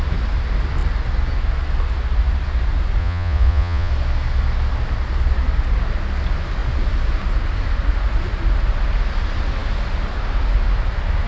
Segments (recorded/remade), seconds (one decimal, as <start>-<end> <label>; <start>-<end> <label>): 0.0-3.0 recorded; 3.0-3.9 remade; 3.9-11.3 recorded